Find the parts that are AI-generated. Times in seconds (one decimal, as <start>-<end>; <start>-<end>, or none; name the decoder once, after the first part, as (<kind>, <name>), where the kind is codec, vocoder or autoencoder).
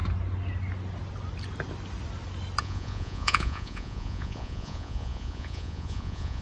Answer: 2.6-6.4 (vocoder, Vocos)